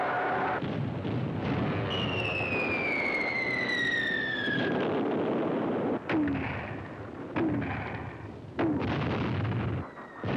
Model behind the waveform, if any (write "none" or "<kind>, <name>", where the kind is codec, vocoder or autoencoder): none